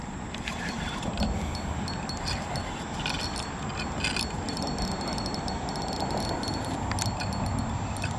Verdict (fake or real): real